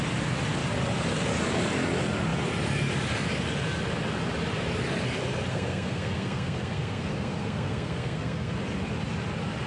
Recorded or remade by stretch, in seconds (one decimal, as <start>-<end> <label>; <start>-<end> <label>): 0.0-5.5 recorded; 5.5-8.5 remade; 8.5-9.7 recorded

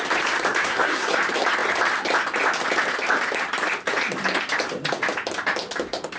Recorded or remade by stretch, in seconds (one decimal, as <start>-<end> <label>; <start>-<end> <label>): 0.0-0.6 recorded; 0.6-1.2 remade; 1.2-6.2 recorded

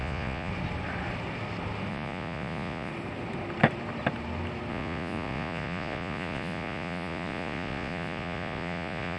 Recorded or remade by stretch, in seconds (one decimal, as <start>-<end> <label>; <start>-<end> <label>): 0.0-0.5 remade; 0.5-1.9 recorded; 1.9-2.9 remade; 2.9-4.7 recorded; 4.7-9.2 remade

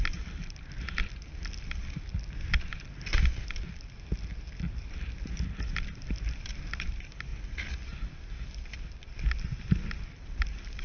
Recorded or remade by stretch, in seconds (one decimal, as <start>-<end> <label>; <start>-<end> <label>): 0.0-10.8 recorded